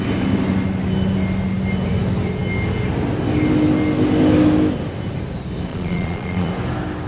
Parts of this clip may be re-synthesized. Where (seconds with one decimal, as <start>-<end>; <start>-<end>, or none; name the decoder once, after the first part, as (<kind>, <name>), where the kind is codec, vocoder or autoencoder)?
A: 5.7-6.5 (vocoder, Vocos)